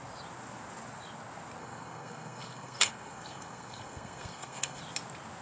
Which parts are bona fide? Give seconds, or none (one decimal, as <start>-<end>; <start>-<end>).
0.0-1.6; 4.8-5.4